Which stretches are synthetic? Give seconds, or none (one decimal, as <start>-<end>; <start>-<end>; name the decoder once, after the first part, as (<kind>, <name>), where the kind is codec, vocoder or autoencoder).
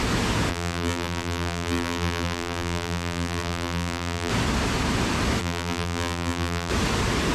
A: 0.5-4.3 (vocoder, BigVGAN v2); 5.4-6.7